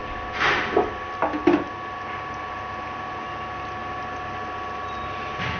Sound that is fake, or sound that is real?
real